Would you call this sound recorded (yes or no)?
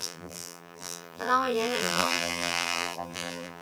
no